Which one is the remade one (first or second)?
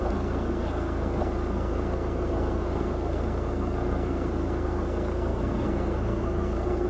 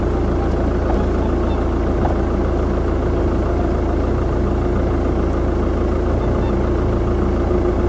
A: first